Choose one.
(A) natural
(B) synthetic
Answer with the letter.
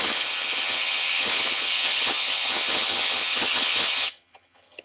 B